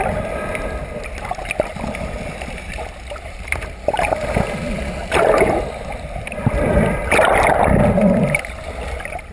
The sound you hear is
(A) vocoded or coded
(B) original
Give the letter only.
B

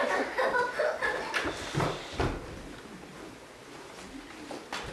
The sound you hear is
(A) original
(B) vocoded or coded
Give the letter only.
A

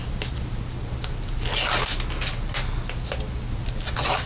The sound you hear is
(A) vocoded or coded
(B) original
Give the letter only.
B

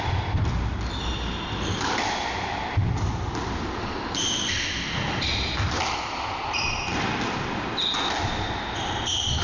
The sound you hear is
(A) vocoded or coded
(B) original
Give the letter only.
B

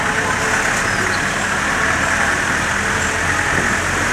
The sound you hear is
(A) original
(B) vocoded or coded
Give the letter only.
A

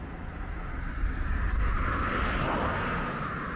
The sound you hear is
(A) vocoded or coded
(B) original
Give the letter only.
B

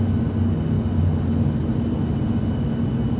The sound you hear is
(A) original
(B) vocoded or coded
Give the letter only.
A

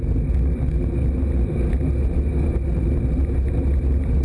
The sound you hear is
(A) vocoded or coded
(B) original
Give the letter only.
B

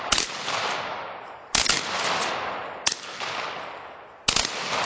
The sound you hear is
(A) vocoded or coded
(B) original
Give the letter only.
B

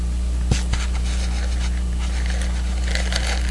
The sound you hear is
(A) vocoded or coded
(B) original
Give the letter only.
B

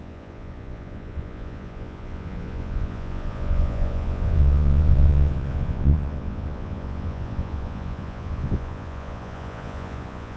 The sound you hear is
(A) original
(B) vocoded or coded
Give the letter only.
B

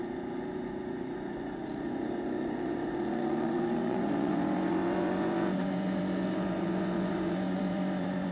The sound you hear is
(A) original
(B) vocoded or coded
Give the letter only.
B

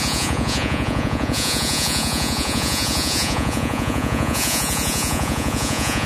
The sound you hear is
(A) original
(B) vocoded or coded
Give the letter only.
B